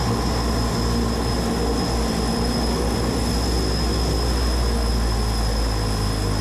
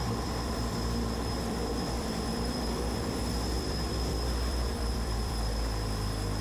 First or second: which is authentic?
first